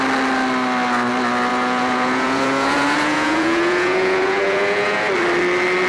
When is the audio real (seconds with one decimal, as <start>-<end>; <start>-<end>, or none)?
0.0-1.5; 5.0-5.9